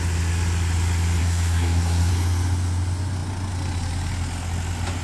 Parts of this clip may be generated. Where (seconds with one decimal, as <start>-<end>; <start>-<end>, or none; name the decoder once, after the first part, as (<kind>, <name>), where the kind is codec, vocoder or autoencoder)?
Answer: 1.2-2.1 (codec, SNAC)

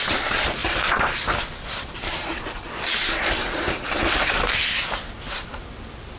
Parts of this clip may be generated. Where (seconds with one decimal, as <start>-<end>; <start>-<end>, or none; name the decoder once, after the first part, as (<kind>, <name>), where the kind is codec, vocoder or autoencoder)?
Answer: 0.6-4.3 (vocoder, BigVGAN v2)

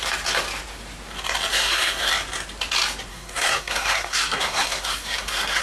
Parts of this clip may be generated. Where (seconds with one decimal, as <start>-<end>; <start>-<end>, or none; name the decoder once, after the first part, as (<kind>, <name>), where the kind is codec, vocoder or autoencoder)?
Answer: 1.5-2.1 (codec, SNAC); 3.1-5.6

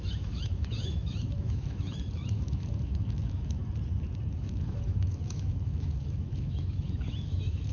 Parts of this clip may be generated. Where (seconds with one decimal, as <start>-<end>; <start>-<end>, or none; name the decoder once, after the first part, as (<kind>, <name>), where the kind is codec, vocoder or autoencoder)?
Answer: 0.0-3.6 (autoencoder, DAC-VAE); 4.4-7.7

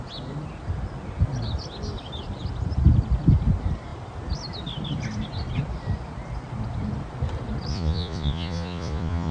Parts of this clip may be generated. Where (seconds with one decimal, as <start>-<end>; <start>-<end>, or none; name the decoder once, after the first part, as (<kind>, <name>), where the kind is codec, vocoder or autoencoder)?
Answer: 7.7-9.3 (vocoder, Vocos)

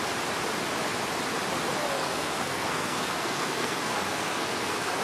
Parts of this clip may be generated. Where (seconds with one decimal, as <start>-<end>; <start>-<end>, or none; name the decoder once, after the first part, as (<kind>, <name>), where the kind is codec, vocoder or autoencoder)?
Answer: 1.8-5.0 (codec, SNAC)

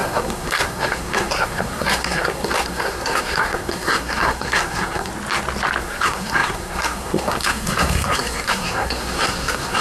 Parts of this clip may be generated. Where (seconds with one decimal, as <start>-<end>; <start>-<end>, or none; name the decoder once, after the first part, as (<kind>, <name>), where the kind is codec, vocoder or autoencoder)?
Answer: 0.0-5.1 (codec, SNAC); 5.8-9.8

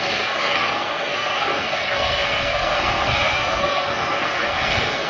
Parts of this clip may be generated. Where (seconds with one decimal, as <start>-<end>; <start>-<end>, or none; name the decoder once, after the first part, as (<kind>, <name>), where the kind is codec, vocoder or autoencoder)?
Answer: 0.0-5.1 (codec, SNAC)